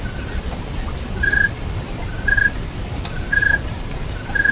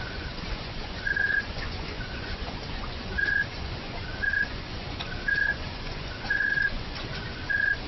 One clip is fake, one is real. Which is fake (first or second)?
second